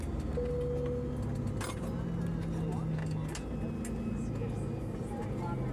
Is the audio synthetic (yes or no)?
no